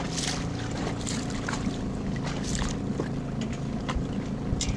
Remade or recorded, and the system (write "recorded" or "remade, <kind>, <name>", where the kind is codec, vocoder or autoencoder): recorded